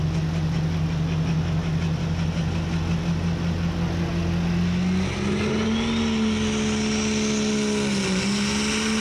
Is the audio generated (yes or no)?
no